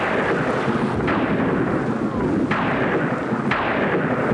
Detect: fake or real real